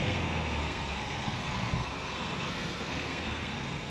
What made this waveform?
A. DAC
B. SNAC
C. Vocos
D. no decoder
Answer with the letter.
B